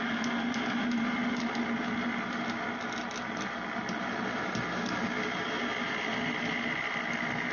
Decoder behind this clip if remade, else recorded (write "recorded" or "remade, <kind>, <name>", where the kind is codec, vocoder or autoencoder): recorded